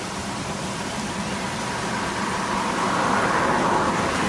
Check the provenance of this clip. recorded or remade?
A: recorded